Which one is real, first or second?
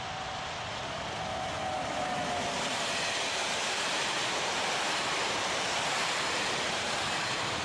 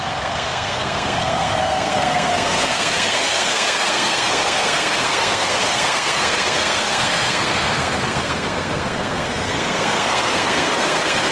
first